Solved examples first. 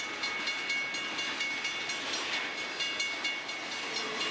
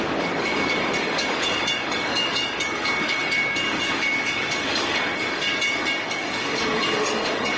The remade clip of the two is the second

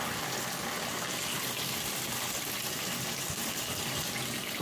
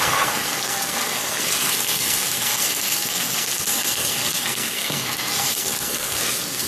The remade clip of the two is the second